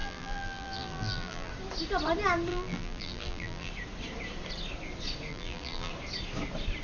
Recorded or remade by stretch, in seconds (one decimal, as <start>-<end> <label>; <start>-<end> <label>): 0.0-1.5 remade; 1.5-2.5 recorded; 2.5-3.7 remade; 3.7-5.3 recorded; 5.3-5.9 remade; 5.9-6.8 recorded